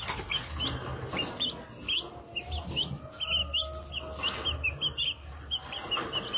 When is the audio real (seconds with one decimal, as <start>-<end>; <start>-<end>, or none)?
0.0-6.4